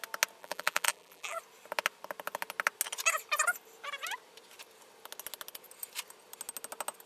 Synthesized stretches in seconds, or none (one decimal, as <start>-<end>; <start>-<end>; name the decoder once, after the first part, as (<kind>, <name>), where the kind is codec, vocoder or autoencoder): 0.4-1.4 (vocoder, BigVGAN v2)